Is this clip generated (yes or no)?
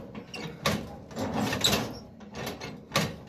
no